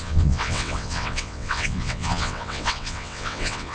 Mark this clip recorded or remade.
remade